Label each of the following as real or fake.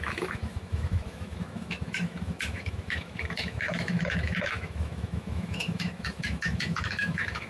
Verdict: fake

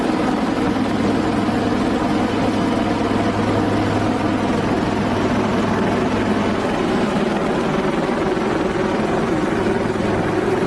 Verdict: real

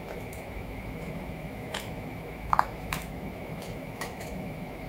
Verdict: fake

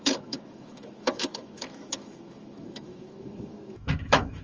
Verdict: fake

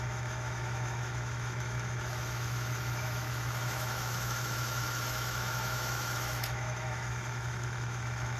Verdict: fake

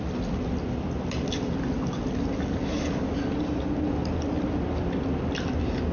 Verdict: real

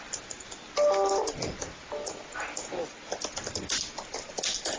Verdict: real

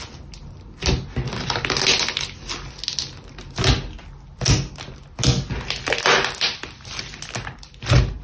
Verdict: real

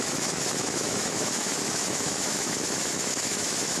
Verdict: fake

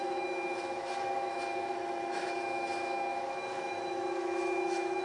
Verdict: fake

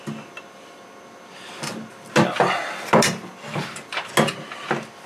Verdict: real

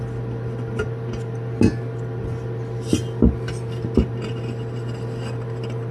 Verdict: real